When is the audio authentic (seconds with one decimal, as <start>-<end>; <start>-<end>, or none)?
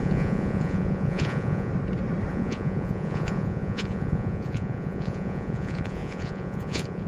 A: 1.7-2.3